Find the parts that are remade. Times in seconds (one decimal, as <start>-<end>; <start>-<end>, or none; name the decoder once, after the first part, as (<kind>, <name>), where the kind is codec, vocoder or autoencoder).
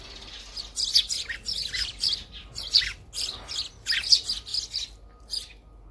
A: none